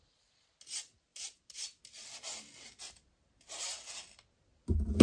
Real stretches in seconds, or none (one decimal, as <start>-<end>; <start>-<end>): 0.0-5.0